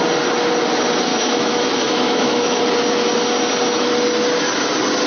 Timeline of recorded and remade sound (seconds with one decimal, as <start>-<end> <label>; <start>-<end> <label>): 0.0-1.1 recorded; 1.1-2.6 remade; 2.6-5.1 recorded